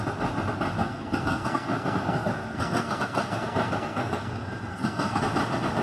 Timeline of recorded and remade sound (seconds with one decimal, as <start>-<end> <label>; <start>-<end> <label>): 0.0-0.8 recorded; 0.8-4.3 remade; 4.3-4.7 recorded; 4.7-5.2 remade; 5.2-5.8 recorded